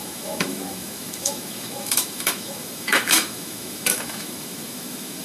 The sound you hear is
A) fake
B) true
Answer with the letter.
A